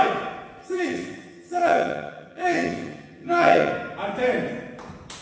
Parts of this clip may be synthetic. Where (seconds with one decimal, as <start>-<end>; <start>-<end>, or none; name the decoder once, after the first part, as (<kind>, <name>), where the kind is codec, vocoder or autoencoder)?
0.6-3.7 (vocoder, HiFi-GAN)